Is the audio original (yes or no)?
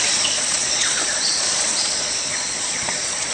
no